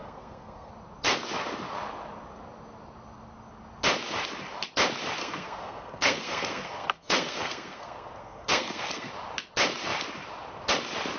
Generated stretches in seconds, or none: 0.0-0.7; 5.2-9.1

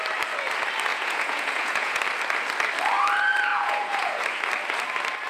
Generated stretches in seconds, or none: 0.9-2.0; 3.5-4.2

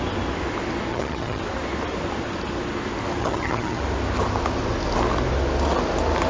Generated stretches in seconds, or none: 0.9-1.4; 3.2-3.8

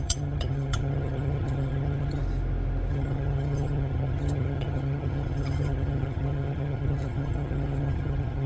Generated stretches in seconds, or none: 0.0-2.2; 2.9-8.5

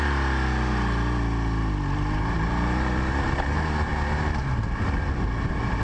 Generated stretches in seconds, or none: none

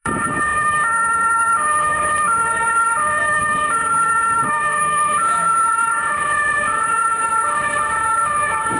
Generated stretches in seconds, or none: 0.0-8.8